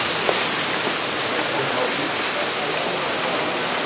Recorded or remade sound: recorded